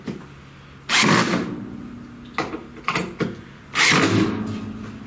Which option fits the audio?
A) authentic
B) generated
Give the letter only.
A